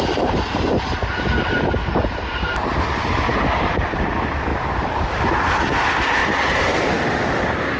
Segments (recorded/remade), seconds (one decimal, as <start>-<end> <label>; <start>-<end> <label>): 0.0-2.0 recorded; 2.0-2.7 remade; 2.7-3.3 recorded; 3.3-4.1 remade; 4.1-4.5 recorded; 4.5-5.2 remade; 5.2-6.2 recorded; 6.2-6.8 remade; 6.8-7.8 recorded